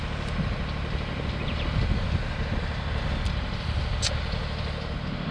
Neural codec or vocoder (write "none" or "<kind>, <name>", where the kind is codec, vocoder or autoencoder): none